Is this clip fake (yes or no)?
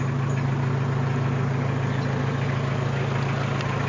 no